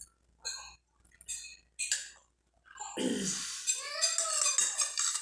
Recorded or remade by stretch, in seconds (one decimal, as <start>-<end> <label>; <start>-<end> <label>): 0.0-5.2 recorded